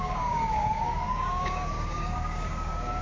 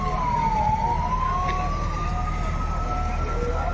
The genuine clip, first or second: second